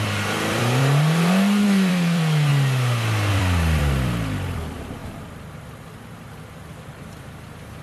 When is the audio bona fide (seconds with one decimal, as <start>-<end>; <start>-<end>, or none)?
2.5-3.3; 5.0-6.7